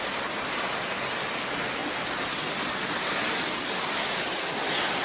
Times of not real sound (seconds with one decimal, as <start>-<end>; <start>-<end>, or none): none